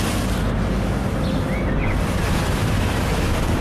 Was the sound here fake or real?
real